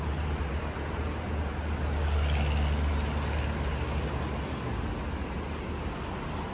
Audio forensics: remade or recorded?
recorded